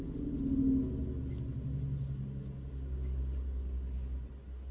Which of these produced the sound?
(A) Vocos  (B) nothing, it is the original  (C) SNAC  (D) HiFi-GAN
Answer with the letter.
B